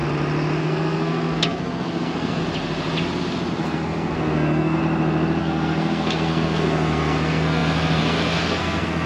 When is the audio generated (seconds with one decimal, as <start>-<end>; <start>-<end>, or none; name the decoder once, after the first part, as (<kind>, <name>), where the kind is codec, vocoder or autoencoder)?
0.6-2.4 (codec, SNAC); 3.5-4.8; 5.4-9.1